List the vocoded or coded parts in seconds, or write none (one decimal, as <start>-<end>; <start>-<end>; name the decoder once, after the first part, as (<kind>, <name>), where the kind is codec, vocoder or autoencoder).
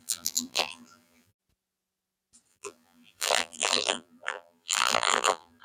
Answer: 0.0-1.4 (vocoder, BigVGAN v2); 2.5-5.6